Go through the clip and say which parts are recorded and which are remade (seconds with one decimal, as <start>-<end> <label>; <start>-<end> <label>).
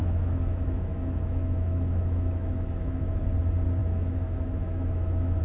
0.0-3.2 remade; 3.2-3.8 recorded; 3.8-5.4 remade